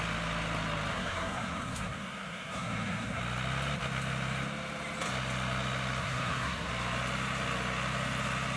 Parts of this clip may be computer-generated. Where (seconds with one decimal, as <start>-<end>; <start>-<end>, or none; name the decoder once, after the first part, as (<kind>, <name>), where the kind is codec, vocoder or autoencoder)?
0.9-3.2 (codec, SNAC); 6.0-6.7